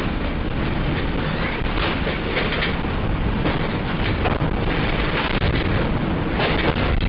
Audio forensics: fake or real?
real